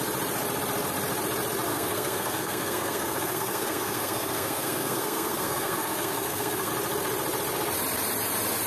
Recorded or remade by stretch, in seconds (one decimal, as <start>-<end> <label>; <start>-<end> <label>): 0.0-1.7 recorded; 1.7-6.7 remade; 6.7-8.7 recorded